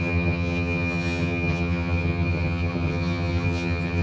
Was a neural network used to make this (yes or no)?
yes